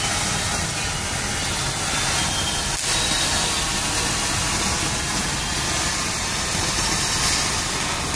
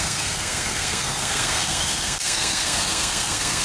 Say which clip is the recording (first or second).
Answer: first